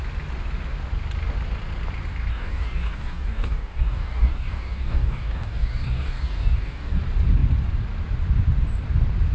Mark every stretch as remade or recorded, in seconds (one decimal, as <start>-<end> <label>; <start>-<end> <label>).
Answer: 0.0-2.3 recorded; 2.3-7.0 remade; 7.0-9.3 recorded